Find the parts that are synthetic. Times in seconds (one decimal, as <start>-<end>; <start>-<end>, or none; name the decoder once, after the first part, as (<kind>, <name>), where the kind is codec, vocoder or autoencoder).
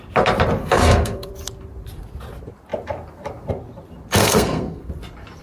0.6-1.3 (codec, SNAC); 4.2-4.9